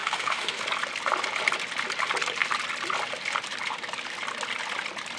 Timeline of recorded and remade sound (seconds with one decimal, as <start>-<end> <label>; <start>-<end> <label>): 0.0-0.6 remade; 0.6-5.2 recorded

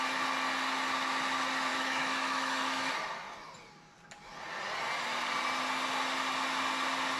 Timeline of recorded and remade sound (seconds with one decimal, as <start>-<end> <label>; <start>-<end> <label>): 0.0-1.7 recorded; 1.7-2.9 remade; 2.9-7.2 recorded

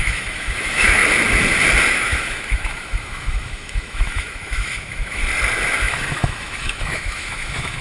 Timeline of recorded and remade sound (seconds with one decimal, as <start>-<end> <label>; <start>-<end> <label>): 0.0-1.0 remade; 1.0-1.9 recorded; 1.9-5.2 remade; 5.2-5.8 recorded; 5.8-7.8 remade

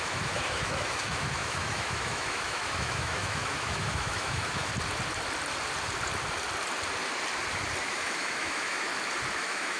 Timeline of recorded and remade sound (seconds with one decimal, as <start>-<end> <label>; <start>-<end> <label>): 0.0-4.7 remade; 4.7-7.8 recorded; 7.8-8.9 remade; 8.9-9.4 recorded; 9.4-9.8 remade